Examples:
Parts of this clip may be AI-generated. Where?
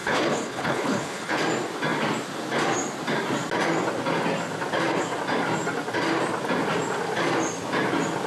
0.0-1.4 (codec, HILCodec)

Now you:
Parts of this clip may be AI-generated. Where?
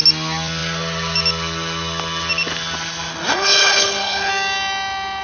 3.3-4.3 (codec, HILCodec)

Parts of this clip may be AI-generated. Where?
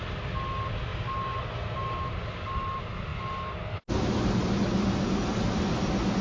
none